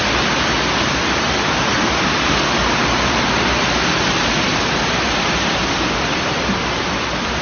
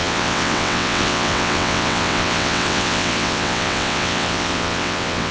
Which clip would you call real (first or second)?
first